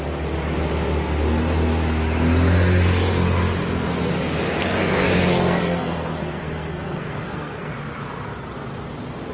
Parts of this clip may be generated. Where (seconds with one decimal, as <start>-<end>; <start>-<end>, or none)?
4.6-7.7